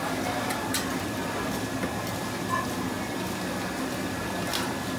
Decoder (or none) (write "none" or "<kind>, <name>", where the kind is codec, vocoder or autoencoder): none